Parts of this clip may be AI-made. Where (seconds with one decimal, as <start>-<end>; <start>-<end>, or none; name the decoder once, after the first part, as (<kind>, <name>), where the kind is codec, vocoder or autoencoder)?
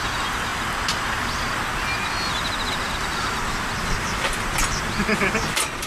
none